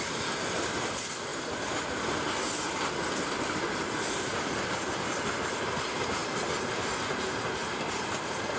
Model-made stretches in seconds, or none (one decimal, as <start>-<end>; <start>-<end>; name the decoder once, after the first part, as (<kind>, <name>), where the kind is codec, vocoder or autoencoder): 0.0-1.3 (vocoder, BigVGAN v2); 2.5-6.2; 7.0-8.6